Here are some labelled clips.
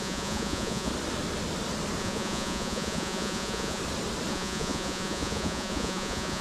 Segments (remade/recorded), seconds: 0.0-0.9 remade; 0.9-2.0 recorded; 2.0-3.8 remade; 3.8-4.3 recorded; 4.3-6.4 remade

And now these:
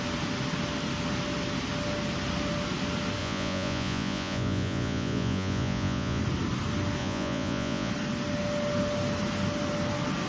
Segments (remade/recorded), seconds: 0.0-3.2 recorded; 3.2-6.2 remade; 6.2-7.0 recorded; 7.0-7.9 remade; 7.9-10.3 recorded

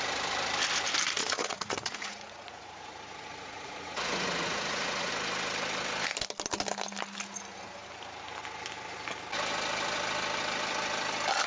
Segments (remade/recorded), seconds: 0.0-1.2 recorded; 1.2-5.1 remade; 5.1-11.5 recorded

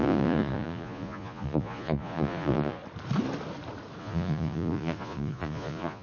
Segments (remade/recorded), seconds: 0.0-2.8 remade; 2.8-4.0 recorded; 4.0-6.0 remade